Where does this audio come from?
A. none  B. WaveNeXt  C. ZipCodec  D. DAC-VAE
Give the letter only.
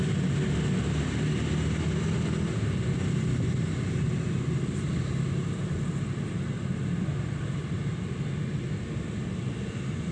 A